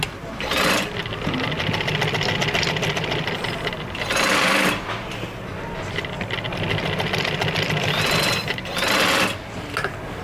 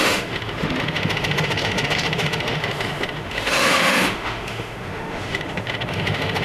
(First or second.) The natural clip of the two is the first